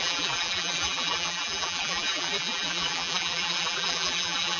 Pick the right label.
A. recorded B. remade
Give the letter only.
B